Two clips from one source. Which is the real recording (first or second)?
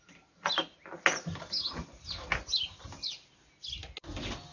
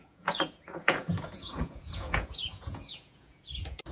first